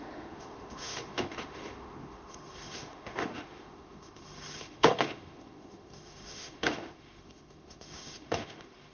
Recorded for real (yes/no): no